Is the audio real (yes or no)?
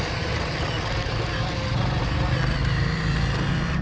yes